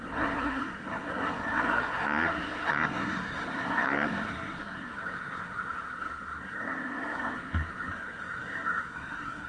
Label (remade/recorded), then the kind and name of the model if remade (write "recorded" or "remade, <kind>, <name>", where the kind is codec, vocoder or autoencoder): remade, codec, SNAC